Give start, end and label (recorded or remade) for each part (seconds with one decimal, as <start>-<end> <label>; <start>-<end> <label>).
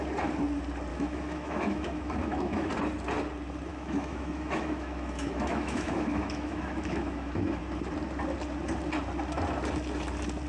0.0-0.9 recorded; 0.9-2.7 remade; 2.7-3.7 recorded; 3.7-7.6 remade; 7.6-10.5 recorded